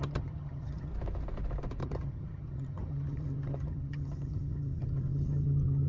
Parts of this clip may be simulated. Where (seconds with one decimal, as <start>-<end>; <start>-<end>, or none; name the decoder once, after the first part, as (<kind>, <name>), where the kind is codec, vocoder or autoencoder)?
0.0-0.9 (vocoder, HiFi-GAN); 1.8-5.9